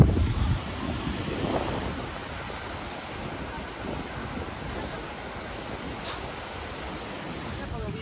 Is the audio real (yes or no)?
yes